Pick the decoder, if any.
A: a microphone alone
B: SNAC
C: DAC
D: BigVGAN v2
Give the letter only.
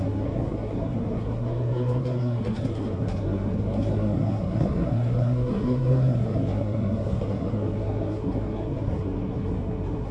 B